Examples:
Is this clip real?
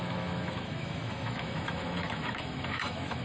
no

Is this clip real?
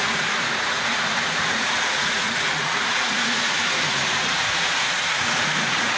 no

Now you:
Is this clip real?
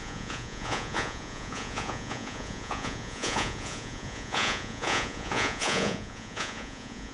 no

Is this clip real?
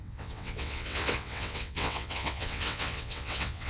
no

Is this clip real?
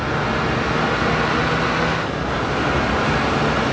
yes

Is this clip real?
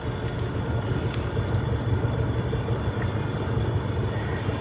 yes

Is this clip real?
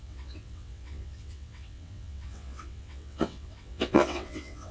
no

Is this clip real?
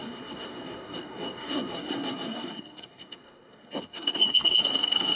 no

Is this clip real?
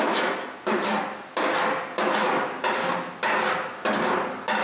yes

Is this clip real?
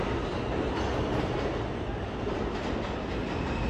yes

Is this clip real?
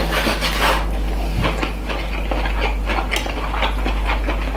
yes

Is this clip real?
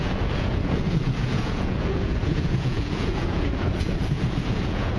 no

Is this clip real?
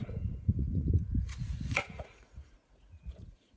no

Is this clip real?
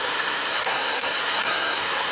no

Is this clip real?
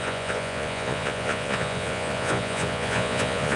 no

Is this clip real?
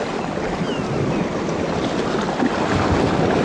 yes